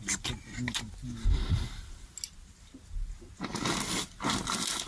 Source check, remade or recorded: recorded